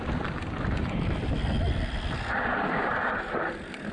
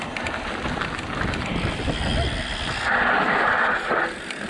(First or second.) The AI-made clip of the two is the first